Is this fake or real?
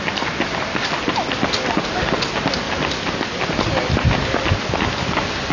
real